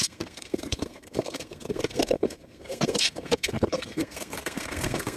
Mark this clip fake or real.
fake